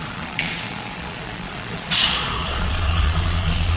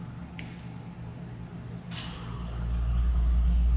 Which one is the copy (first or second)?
first